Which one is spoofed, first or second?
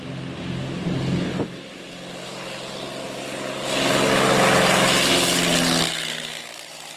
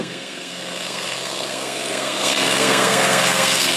second